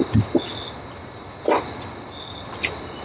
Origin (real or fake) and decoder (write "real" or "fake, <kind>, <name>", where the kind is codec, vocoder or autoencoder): real